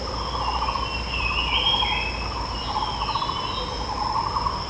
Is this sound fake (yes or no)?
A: no